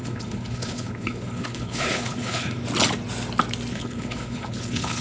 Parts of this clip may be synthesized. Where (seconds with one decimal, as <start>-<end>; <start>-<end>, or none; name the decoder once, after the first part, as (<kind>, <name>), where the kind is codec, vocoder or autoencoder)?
0.0-2.6 (codec, HILCodec); 3.7-5.0